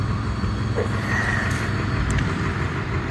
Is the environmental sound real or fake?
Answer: fake